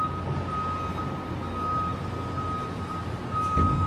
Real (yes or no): yes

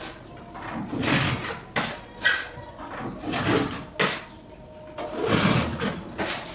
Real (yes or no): yes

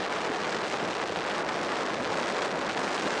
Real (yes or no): yes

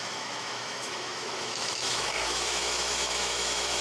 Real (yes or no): no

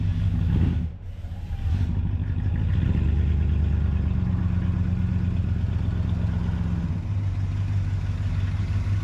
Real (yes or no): yes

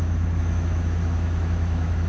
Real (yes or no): no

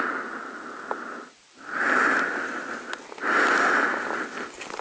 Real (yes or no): yes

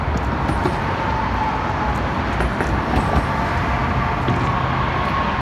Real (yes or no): yes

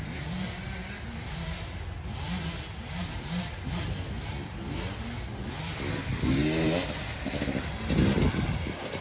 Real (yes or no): yes